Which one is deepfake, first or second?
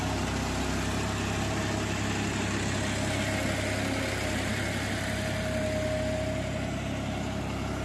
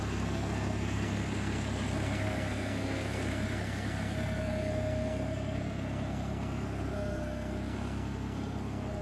second